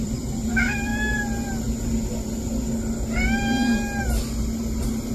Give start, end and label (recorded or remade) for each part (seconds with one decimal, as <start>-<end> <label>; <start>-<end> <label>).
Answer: 0.0-0.9 remade; 0.9-4.0 recorded; 4.0-5.1 remade